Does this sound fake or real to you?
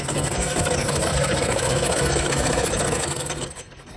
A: fake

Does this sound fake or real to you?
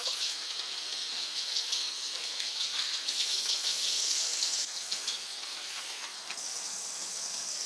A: fake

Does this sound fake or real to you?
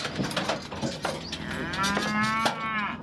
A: real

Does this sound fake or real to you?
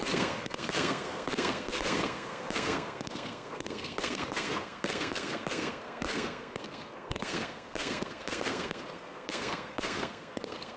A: fake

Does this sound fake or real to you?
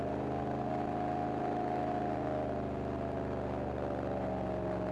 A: real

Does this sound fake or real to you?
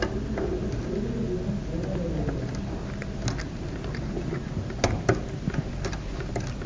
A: real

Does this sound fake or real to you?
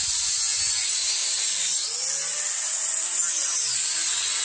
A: real